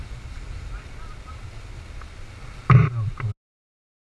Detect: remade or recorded recorded